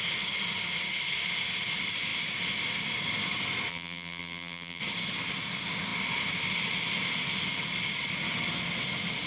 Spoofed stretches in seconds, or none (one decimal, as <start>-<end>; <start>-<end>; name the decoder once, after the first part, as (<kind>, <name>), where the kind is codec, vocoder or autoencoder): 3.7-4.8 (vocoder, BigVGAN v2)